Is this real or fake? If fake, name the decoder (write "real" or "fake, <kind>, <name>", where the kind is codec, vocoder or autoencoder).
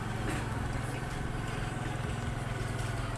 real